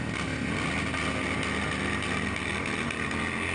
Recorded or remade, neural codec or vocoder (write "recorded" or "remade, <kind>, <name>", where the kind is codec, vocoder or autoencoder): recorded